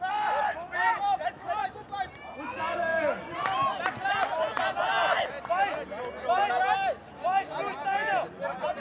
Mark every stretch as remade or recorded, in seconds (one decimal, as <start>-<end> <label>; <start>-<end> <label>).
0.0-8.8 recorded